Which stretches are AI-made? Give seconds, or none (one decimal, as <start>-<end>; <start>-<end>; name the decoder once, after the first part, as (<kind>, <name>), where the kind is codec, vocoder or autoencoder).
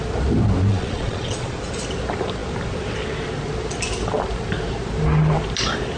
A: 0.7-1.6 (vocoder, Vocos)